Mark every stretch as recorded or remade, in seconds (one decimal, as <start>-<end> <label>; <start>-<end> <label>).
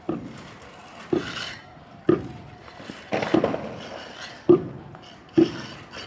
0.0-6.1 recorded